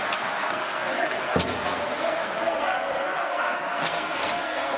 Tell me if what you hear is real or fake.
fake